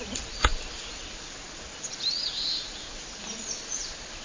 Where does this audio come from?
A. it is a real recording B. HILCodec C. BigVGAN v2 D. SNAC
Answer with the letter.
C